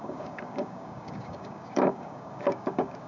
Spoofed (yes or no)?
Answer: yes